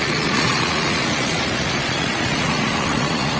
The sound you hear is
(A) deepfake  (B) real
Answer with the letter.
A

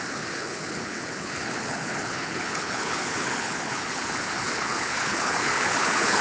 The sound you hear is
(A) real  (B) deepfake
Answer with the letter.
B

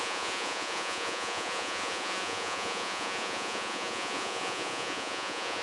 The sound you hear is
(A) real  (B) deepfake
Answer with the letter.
B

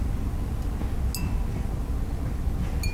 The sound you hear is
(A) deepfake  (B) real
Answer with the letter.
B